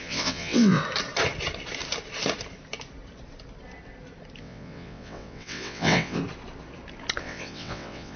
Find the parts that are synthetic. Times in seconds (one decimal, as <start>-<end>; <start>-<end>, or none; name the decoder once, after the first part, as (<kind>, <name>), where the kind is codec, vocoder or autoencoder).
0.0-0.8 (vocoder, WaveNeXt); 4.4-6.2; 7.2-8.2